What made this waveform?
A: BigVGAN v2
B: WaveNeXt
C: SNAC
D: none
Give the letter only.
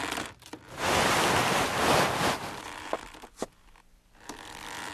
D